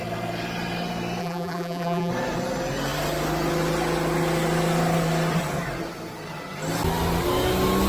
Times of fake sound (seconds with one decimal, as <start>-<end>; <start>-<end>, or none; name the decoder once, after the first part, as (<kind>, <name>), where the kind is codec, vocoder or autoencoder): 1.2-2.1 (vocoder, BigVGAN v2)